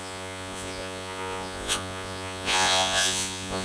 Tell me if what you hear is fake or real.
fake